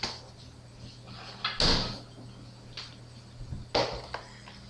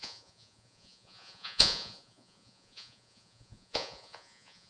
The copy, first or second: second